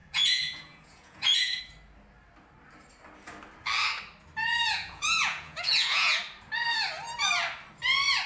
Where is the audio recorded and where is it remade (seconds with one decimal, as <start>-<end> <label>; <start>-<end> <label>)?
0.0-1.6 remade; 1.6-4.5 recorded; 4.5-6.2 remade; 6.2-8.3 recorded